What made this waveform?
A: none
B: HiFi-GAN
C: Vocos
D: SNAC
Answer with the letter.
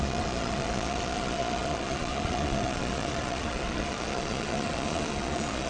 C